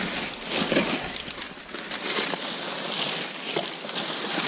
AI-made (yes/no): no